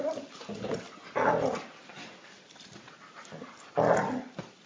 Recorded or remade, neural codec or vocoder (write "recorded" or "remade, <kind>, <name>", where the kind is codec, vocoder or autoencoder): recorded